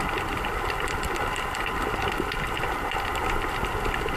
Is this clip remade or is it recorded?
recorded